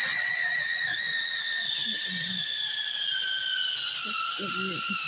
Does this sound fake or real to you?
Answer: real